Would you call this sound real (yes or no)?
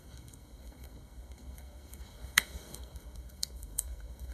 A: no